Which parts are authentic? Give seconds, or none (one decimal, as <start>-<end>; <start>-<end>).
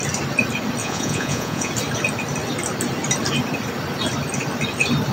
0.0-0.8; 1.7-5.1